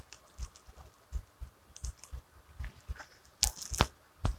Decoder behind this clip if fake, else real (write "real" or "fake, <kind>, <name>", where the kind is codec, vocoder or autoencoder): real